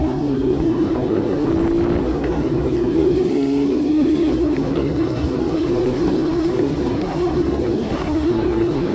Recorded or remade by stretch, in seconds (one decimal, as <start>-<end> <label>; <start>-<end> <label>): 0.0-1.5 remade; 1.5-2.0 recorded; 2.0-8.9 remade